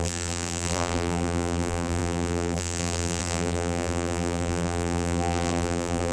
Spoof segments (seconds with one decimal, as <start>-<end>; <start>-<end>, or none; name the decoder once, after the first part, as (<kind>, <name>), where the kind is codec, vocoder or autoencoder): 0.0-6.1 (vocoder, BigVGAN v2)